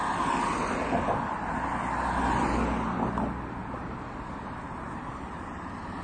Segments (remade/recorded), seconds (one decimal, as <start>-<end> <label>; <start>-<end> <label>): 0.0-3.6 recorded; 3.6-6.0 remade